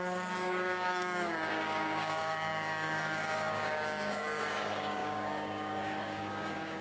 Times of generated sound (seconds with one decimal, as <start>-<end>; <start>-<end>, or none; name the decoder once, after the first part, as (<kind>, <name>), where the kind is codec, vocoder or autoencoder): 0.0-6.8 (codec, DAC)